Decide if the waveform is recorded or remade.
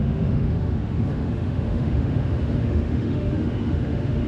remade